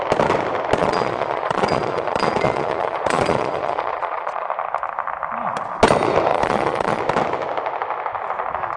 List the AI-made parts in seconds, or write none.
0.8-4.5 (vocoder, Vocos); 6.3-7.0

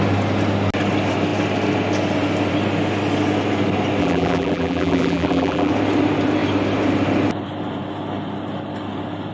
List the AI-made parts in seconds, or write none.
4.0-5.7 (vocoder, BigVGAN v2)

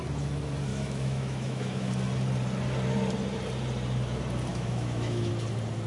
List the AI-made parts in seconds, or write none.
0.7-1.9 (autoencoder, DAC-VAE); 4.5-5.3

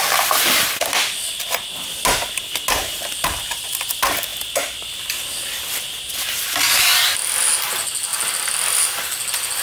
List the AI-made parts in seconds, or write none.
none

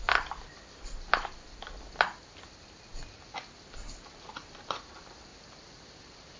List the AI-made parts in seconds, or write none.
5.3-6.4 (vocoder, BigVGAN v2)

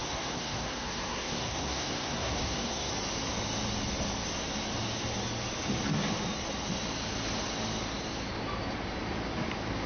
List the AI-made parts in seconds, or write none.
0.0-2.9 (codec, SNAC)

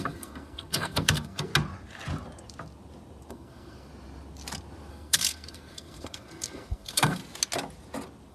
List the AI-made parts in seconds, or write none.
0.0-1.5 (codec, SNAC); 3.3-3.9; 4.9-7.2